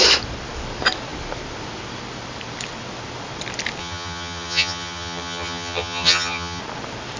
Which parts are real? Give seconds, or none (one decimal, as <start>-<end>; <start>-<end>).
0.0-3.8; 6.6-7.2